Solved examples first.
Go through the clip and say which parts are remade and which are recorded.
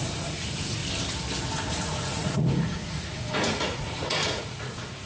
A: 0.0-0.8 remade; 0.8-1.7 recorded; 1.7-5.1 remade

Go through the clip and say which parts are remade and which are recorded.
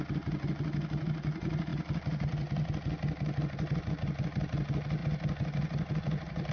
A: 0.0-6.5 recorded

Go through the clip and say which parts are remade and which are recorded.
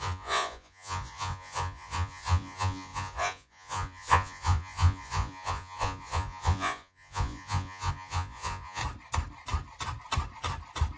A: 0.0-8.8 remade; 8.8-11.0 recorded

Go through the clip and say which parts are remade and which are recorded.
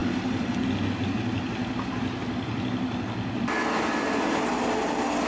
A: 0.0-5.3 recorded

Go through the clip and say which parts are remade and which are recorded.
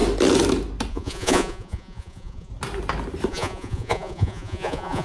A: 0.0-0.9 recorded; 0.9-2.5 remade; 2.5-3.3 recorded; 3.3-5.0 remade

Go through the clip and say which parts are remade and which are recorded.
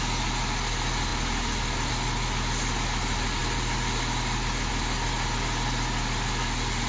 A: 0.0-6.9 recorded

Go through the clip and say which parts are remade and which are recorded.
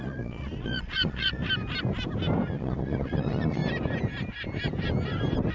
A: 0.0-1.4 remade; 1.4-2.5 recorded; 2.5-3.6 remade; 3.6-5.5 recorded